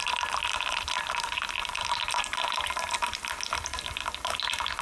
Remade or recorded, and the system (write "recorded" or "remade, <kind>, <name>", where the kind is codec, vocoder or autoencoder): recorded